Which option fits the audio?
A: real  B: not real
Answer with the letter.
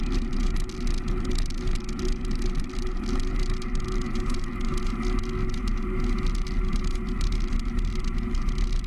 A